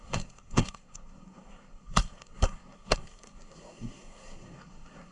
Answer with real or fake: fake